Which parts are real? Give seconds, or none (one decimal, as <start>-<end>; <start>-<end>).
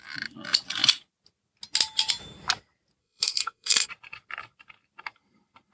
0.0-3.0; 3.9-5.7